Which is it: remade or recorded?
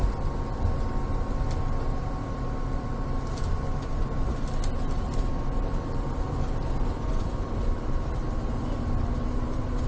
remade